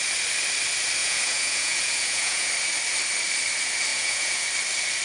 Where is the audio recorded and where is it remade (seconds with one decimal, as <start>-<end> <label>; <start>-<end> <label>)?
0.0-1.0 recorded; 1.0-2.5 remade; 2.5-3.9 recorded; 3.9-4.5 remade; 4.5-5.0 recorded